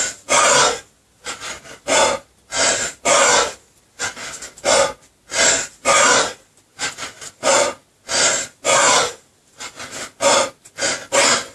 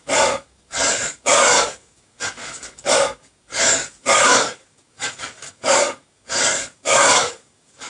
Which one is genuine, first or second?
first